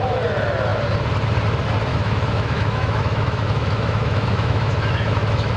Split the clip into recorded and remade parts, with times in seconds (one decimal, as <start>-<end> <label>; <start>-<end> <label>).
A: 0.0-1.9 recorded; 1.9-5.6 remade